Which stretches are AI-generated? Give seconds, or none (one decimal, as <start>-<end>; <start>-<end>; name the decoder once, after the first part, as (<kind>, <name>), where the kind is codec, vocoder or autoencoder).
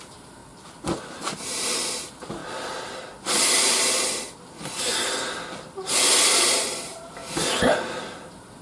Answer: 0.0-0.4 (vocoder, BigVGAN v2); 1.0-2.4; 6.8-7.2; 8.0-8.6